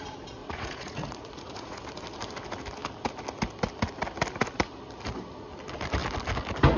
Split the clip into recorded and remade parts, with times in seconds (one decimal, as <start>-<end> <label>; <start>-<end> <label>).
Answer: 0.0-0.4 recorded; 0.4-1.8 remade; 1.8-6.8 recorded